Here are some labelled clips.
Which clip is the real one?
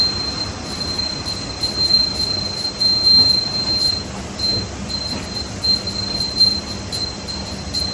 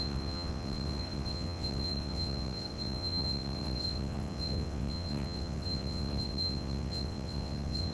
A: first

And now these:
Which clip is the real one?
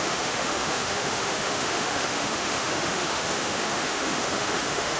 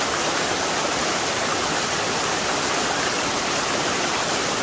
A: second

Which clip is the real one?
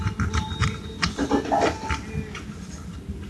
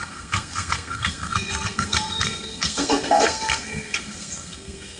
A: first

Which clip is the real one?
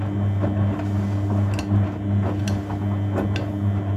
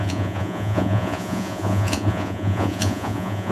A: first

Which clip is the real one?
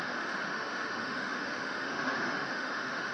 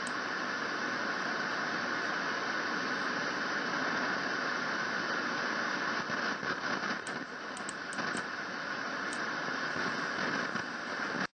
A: second